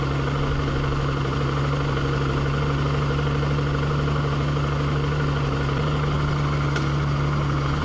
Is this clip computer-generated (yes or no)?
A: no